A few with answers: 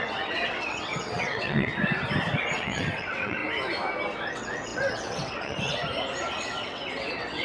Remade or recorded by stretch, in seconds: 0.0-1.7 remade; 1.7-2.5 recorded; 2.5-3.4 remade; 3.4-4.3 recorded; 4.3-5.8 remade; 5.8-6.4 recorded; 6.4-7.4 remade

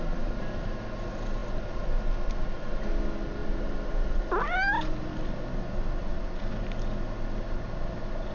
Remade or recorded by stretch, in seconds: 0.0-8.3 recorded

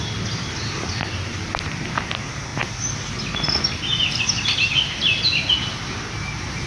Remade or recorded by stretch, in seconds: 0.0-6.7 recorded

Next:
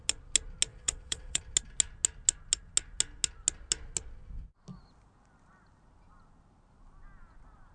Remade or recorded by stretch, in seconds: 0.0-0.7 recorded; 0.7-1.4 remade; 1.4-7.7 recorded